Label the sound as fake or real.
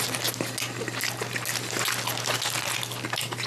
real